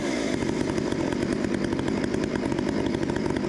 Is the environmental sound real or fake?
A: real